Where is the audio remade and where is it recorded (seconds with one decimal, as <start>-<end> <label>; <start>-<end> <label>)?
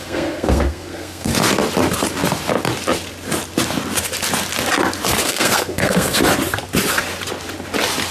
0.0-1.3 remade; 1.3-5.2 recorded; 5.2-6.2 remade; 6.2-8.1 recorded